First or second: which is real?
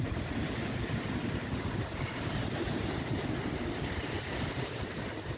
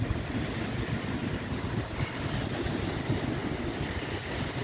second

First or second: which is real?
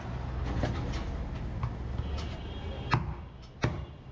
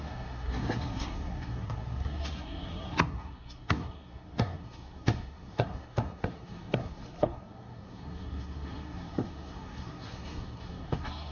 first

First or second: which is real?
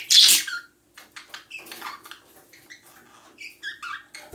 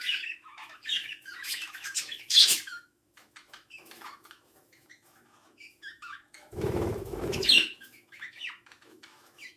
first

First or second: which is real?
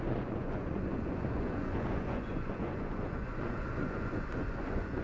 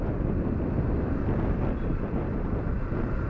second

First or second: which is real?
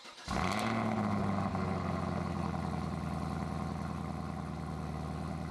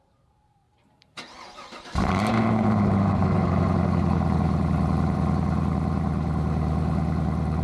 first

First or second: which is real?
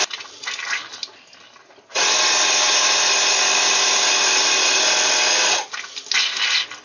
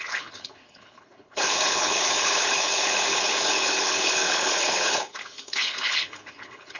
first